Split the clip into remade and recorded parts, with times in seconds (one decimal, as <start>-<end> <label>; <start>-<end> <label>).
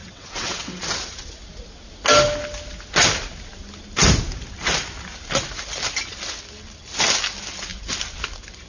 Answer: 0.0-0.8 remade; 0.8-8.7 recorded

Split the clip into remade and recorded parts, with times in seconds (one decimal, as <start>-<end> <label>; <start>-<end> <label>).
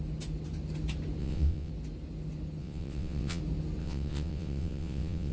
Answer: 0.0-1.2 recorded; 1.2-1.7 remade; 1.7-2.6 recorded; 2.6-3.4 remade; 3.4-3.8 recorded; 3.8-5.3 remade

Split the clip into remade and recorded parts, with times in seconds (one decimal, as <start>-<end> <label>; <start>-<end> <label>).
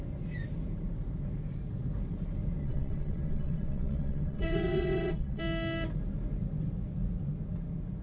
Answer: 0.0-2.6 recorded; 2.6-5.4 remade; 5.4-8.0 recorded